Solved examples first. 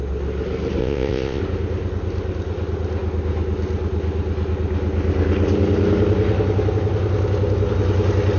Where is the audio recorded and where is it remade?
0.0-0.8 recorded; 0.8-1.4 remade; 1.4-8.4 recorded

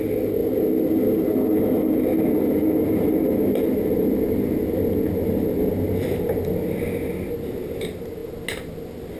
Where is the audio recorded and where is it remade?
0.0-9.2 recorded

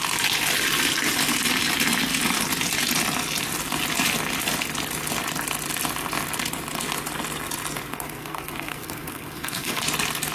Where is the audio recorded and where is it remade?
0.0-7.9 recorded; 7.9-9.8 remade; 9.8-10.3 recorded

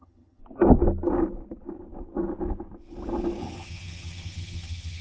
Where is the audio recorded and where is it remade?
0.0-0.4 remade; 0.4-3.4 recorded; 3.4-5.0 remade

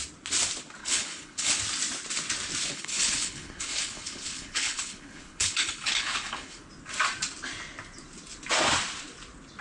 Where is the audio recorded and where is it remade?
0.0-0.8 recorded; 0.8-1.6 remade; 1.6-2.7 recorded; 2.7-6.7 remade; 6.7-9.6 recorded

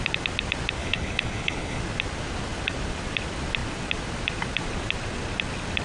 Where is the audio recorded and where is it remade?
0.0-0.8 recorded; 0.8-1.8 remade; 1.8-5.8 recorded

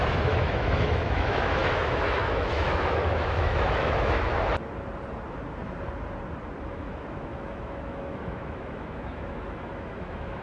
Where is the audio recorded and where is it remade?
0.0-4.3 remade; 4.3-6.6 recorded; 6.6-10.4 remade

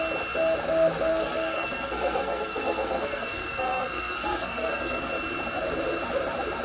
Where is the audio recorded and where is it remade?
0.0-1.1 recorded; 1.1-5.1 remade; 5.1-6.6 recorded